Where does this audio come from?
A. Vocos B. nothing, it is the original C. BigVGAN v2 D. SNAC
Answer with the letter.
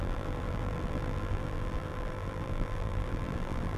C